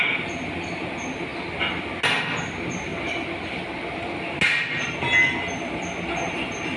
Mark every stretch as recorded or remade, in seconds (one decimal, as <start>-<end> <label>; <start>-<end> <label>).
0.0-6.8 recorded